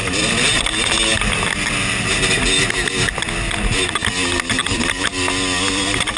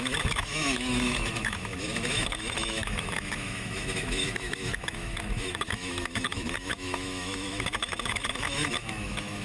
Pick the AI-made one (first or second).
second